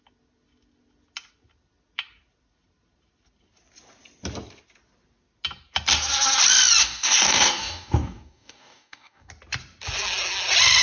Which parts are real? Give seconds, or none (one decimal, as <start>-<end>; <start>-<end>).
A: 0.0-6.8; 9.3-10.8